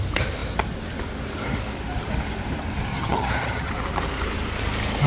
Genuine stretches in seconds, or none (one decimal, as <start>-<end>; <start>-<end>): 0.0-2.9; 3.7-5.1